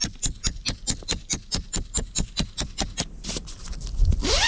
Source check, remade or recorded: recorded